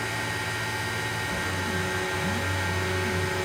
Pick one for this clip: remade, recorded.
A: recorded